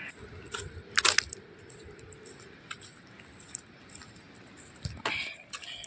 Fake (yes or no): no